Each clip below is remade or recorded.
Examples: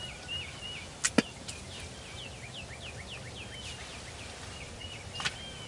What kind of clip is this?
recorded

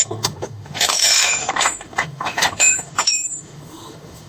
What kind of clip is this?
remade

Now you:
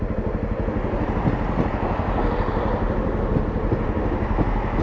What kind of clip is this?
recorded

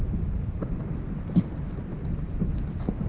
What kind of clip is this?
recorded